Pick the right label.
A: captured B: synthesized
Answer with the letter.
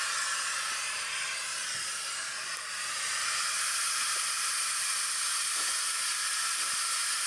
A